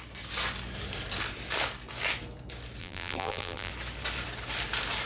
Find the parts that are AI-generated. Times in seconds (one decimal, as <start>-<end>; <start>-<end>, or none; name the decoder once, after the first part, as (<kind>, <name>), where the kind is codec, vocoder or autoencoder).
2.8-3.7 (vocoder, BigVGAN v2)